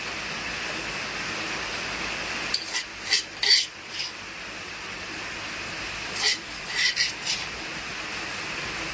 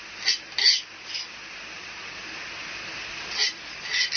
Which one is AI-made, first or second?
first